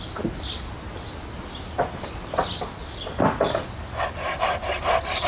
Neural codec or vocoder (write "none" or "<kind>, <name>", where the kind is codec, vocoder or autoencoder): none